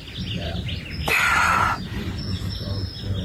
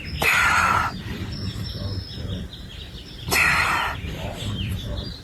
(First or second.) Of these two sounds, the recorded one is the first